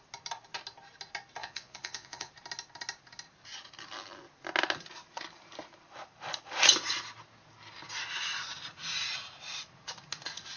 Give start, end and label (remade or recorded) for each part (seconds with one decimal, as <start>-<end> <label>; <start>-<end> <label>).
0.0-1.4 recorded; 1.4-2.3 remade; 2.3-10.6 recorded